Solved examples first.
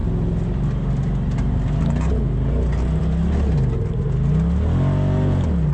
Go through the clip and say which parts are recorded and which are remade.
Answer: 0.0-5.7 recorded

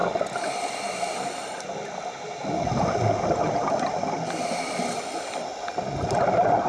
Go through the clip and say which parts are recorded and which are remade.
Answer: 0.0-6.7 recorded

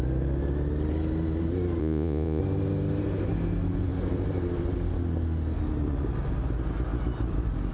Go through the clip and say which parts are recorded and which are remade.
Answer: 0.0-1.8 recorded; 1.8-2.4 remade; 2.4-7.7 recorded

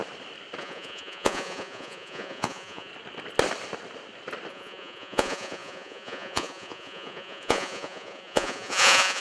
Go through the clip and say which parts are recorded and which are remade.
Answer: 0.0-0.6 recorded; 0.6-2.9 remade; 2.9-4.5 recorded; 4.5-9.2 remade

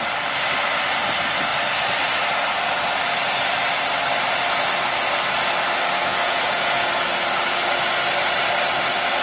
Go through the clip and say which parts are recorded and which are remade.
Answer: 0.0-6.1 recorded; 6.1-6.9 remade; 6.9-9.2 recorded

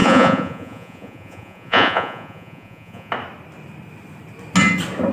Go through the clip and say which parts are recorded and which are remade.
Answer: 0.0-3.1 remade; 3.1-5.1 recorded

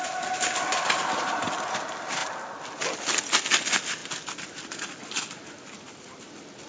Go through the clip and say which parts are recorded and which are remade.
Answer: 0.0-6.7 recorded